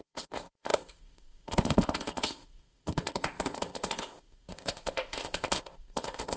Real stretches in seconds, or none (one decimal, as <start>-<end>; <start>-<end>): none